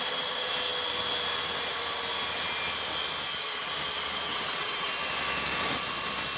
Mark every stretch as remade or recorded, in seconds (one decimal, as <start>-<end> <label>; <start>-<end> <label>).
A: 0.0-4.3 recorded; 4.3-4.9 remade; 4.9-6.4 recorded

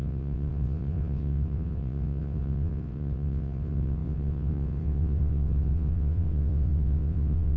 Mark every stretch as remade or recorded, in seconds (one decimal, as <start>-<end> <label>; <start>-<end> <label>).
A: 0.0-7.6 remade

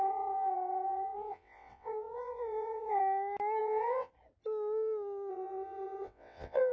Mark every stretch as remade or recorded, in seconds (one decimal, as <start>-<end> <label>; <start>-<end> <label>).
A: 0.0-3.0 remade; 3.0-3.6 recorded; 3.6-4.1 remade; 4.1-5.3 recorded; 5.3-6.7 remade

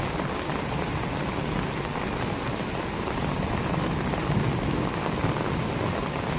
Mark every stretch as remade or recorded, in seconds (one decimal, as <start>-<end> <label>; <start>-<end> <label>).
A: 0.0-6.4 recorded

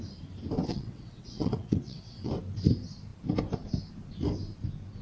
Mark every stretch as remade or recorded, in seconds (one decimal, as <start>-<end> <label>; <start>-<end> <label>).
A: 0.0-0.7 recorded; 0.7-2.3 remade; 2.3-5.0 recorded

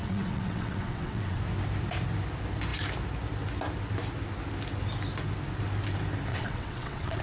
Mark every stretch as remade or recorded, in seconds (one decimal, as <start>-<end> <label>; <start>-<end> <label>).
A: 0.0-1.4 remade; 1.4-6.3 recorded; 6.3-7.2 remade